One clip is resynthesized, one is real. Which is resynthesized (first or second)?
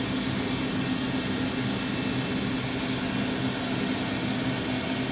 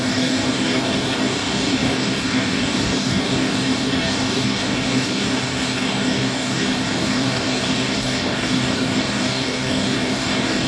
second